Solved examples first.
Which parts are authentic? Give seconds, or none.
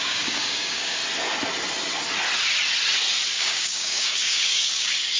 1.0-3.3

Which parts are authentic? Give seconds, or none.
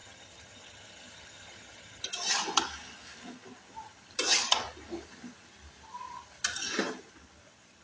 2.0-7.8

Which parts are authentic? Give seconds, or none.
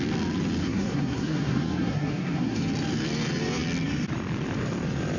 0.0-0.6; 2.6-5.2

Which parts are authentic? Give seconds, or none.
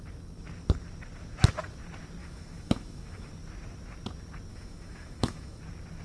0.0-2.2; 3.3-4.5; 5.6-6.0